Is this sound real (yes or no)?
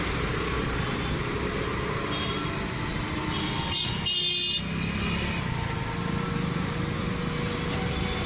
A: yes